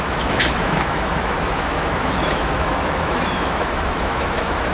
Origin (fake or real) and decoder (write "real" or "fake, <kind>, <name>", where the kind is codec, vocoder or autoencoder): fake, autoencoder, DAC-VAE